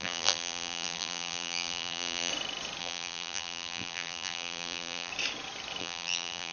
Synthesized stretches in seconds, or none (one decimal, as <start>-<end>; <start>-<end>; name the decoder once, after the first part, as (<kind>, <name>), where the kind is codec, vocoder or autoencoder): 0.0-2.3 (vocoder, BigVGAN v2); 2.8-5.1; 5.8-6.5